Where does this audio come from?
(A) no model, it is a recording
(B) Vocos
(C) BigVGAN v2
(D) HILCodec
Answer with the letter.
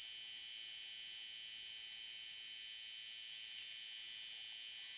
A